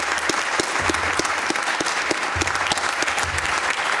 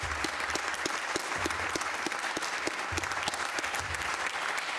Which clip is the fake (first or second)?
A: second